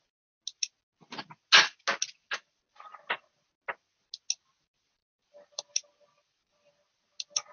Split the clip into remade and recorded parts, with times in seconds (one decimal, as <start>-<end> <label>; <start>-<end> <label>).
0.0-5.0 recorded; 5.0-6.7 remade; 6.7-7.5 recorded